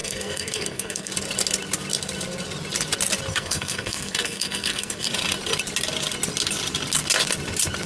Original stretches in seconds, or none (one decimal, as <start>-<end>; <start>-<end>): 1.1-3.3; 5.1-7.9

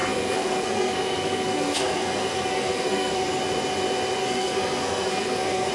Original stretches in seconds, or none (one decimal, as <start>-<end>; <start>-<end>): 3.4-4.2